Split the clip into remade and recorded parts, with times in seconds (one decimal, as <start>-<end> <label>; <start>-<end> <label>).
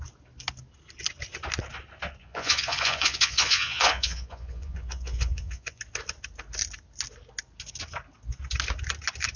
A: 0.0-2.2 recorded; 2.2-5.8 remade; 5.8-9.4 recorded